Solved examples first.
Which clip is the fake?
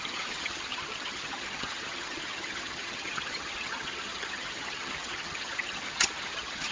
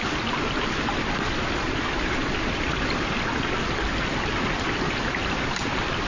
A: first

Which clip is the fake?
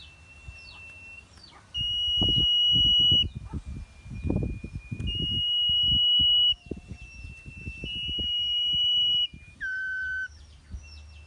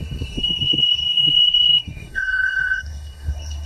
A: second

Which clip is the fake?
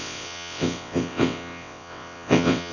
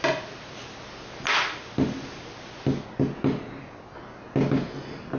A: first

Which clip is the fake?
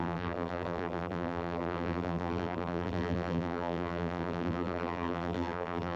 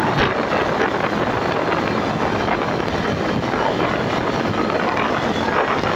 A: first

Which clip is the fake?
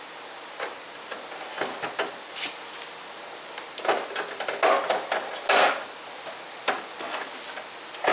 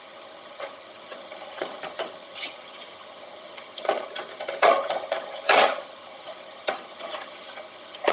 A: second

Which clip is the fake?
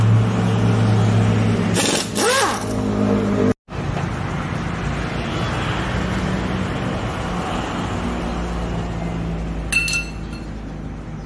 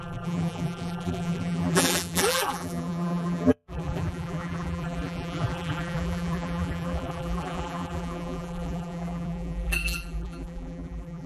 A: second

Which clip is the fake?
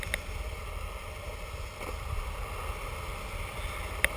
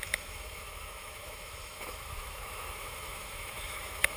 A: second